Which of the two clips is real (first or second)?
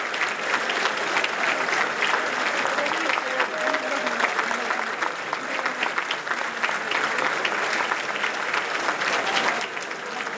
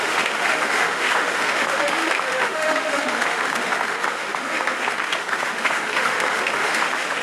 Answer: first